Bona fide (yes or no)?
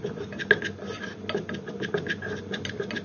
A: yes